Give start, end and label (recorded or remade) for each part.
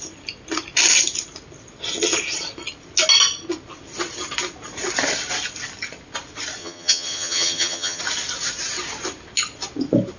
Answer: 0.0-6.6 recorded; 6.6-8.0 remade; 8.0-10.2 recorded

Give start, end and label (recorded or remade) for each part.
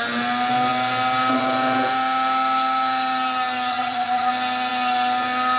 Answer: 0.0-3.7 recorded; 3.7-4.3 remade; 4.3-5.6 recorded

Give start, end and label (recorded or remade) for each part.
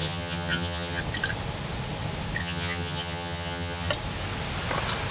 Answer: 0.0-1.0 remade; 1.0-2.4 recorded; 2.4-3.9 remade; 3.9-5.1 recorded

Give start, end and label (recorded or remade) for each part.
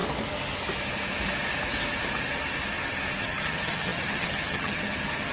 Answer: 0.0-3.2 recorded; 3.2-5.3 remade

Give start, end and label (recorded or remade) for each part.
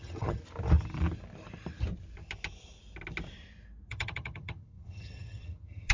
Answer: 0.0-0.4 remade; 0.4-3.9 recorded; 3.9-5.9 remade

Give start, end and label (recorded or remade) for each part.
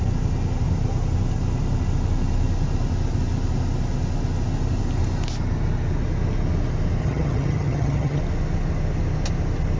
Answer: 0.0-7.0 recorded; 7.0-8.2 remade; 8.2-9.8 recorded